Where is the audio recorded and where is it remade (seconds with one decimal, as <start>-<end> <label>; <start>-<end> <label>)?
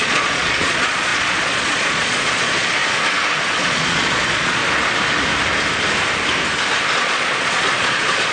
0.0-2.8 remade; 2.8-3.4 recorded; 3.4-4.6 remade; 4.6-7.0 recorded; 7.0-8.3 remade